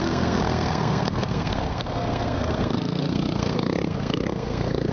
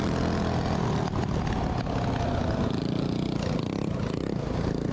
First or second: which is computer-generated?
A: first